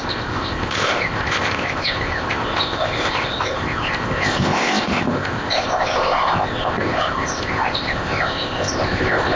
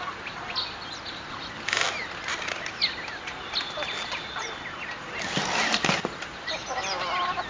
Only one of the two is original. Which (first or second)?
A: second